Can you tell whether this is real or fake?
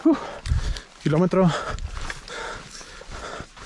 real